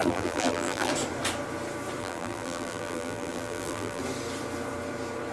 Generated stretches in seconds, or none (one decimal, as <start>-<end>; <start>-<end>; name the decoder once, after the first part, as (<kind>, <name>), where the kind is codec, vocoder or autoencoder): 0.0-0.9 (vocoder, BigVGAN v2); 2.0-4.0